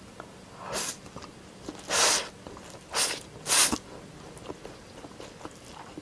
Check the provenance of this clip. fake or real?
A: real